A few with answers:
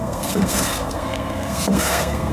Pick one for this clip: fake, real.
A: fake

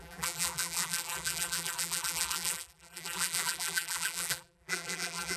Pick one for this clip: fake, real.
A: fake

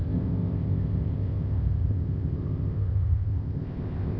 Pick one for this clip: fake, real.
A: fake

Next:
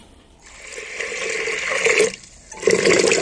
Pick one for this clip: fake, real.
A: real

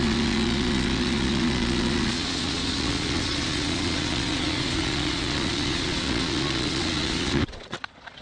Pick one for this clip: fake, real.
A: fake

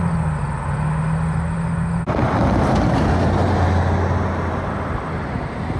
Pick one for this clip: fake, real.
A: real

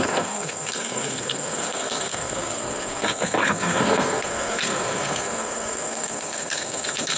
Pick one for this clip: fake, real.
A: fake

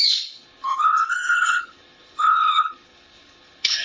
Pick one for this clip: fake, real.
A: fake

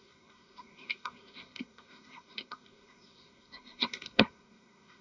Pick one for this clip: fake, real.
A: fake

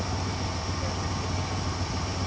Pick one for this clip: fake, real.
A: real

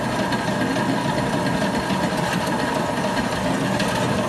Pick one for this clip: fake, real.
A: real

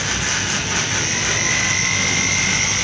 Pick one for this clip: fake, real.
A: real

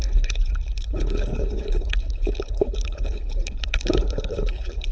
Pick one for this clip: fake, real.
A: fake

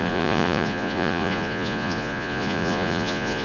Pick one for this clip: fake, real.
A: fake